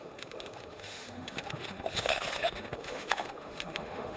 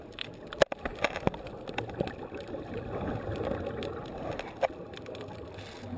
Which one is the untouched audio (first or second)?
second